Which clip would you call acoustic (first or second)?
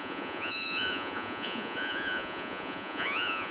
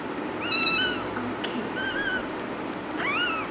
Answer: second